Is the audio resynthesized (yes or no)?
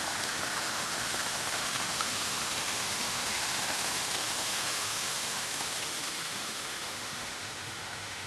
yes